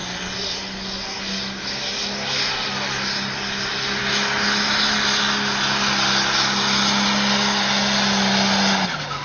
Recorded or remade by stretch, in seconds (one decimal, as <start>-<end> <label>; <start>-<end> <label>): 0.0-9.2 recorded